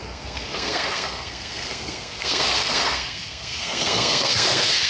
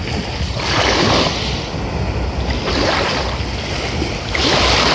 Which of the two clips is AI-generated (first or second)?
first